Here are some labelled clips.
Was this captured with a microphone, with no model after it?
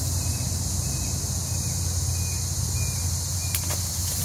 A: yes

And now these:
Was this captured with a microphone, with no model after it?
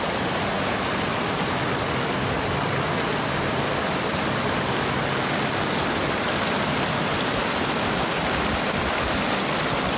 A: yes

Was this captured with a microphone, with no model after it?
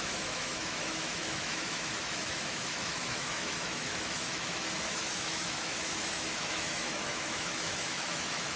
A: no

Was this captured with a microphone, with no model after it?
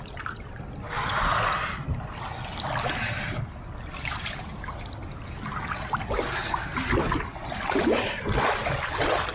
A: yes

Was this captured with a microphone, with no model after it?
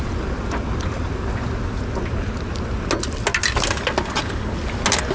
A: yes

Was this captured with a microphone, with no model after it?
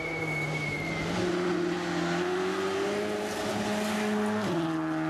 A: yes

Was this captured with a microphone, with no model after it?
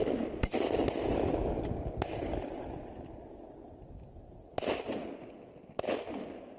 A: yes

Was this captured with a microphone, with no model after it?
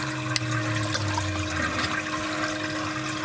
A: yes